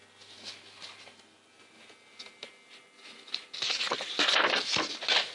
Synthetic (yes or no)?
no